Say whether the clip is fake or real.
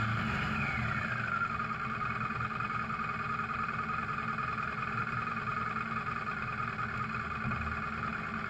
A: real